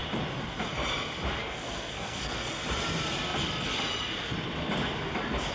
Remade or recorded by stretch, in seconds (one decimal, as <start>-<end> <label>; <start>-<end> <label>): 0.0-1.4 recorded; 1.4-2.6 remade; 2.6-5.5 recorded